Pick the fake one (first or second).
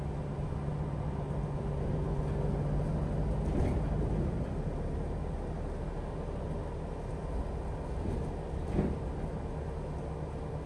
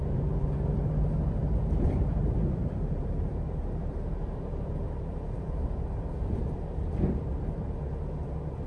second